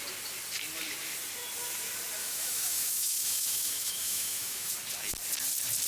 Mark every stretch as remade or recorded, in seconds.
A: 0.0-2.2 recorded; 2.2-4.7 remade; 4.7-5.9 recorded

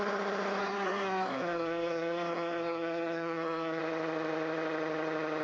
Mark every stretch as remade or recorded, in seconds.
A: 0.0-0.6 recorded; 0.6-3.8 remade; 3.8-5.4 recorded

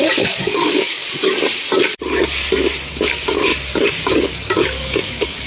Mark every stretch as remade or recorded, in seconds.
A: 0.0-1.0 remade; 1.0-2.9 recorded; 2.9-3.5 remade; 3.5-4.1 recorded; 4.1-5.5 remade

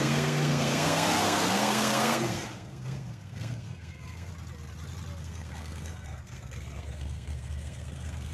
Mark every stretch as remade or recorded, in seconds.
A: 0.0-4.3 remade; 4.3-5.2 recorded; 5.2-8.3 remade